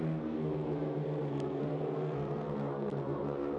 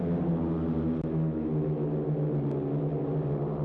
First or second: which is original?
second